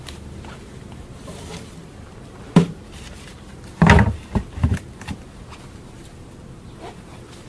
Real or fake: real